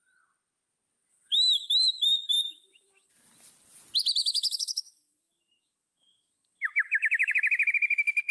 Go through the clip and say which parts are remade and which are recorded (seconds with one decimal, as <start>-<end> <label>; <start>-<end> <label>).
0.0-1.1 recorded; 1.1-3.1 remade; 3.1-4.2 recorded; 4.2-7.3 remade; 7.3-8.3 recorded